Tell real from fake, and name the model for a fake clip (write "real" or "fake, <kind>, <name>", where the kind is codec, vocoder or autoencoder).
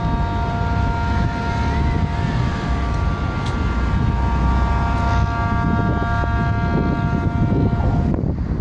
real